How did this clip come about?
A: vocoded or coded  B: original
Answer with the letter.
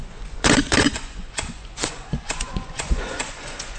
A